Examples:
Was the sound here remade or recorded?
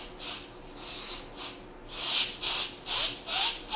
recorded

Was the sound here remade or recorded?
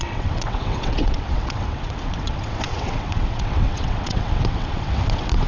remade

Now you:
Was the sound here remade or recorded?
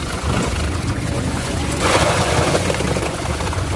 remade